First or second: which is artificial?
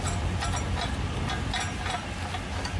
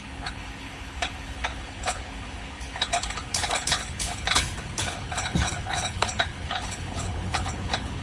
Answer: second